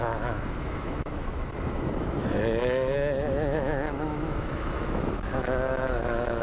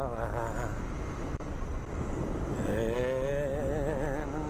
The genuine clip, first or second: second